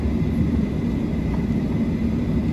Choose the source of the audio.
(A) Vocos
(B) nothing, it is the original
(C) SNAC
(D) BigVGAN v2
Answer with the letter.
B